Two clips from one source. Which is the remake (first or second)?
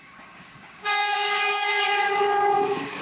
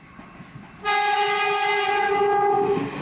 first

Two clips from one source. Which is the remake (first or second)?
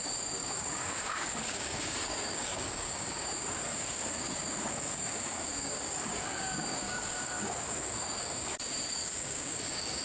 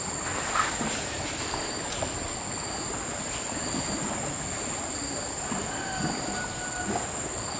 first